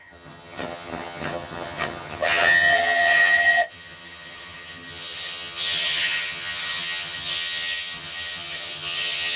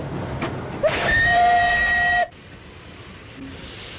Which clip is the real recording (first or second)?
second